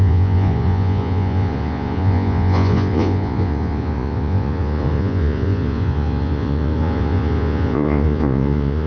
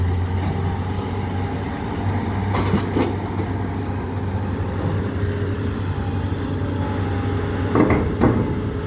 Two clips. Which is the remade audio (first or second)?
first